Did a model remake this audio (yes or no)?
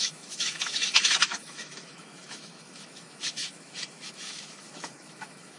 yes